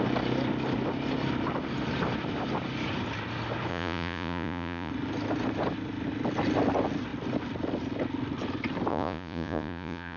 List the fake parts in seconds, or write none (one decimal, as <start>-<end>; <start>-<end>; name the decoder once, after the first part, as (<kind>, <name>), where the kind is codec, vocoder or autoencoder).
3.7-4.9 (vocoder, Vocos); 8.9-10.2